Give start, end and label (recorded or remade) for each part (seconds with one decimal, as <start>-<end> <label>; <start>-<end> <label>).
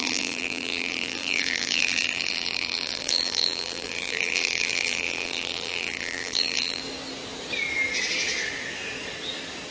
0.0-6.8 remade; 6.8-9.7 recorded